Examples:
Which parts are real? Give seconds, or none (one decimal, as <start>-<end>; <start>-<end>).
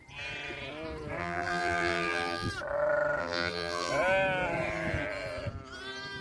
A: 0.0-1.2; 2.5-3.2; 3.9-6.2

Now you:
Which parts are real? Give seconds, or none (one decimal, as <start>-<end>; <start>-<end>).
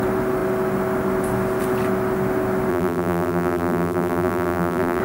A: 0.0-2.7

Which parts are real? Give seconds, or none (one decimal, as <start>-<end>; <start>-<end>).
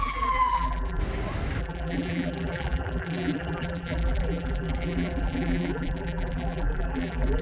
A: 1.0-1.6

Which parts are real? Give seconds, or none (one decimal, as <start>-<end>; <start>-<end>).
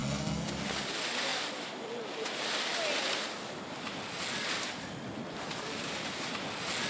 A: 0.0-6.9